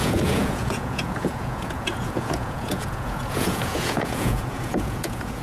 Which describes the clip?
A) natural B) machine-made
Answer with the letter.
B